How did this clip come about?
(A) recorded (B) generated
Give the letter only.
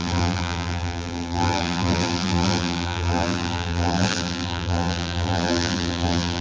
B